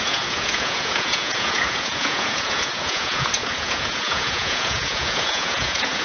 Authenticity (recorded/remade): remade